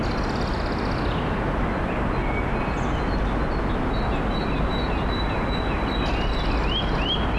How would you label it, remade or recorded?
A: recorded